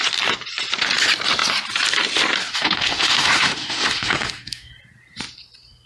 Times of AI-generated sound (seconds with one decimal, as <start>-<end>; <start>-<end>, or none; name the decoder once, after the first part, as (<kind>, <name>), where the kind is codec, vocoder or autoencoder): 2.5-4.7 (autoencoder, DAC-VAE)